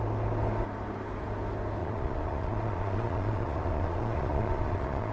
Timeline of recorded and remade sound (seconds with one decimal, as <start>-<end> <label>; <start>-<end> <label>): 0.0-1.8 recorded; 1.8-5.1 remade